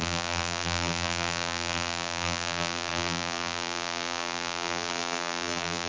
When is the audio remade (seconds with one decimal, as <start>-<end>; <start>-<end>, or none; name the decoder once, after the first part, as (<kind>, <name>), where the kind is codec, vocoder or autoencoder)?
0.0-5.9 (vocoder, BigVGAN v2)